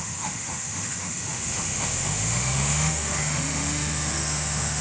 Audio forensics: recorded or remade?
remade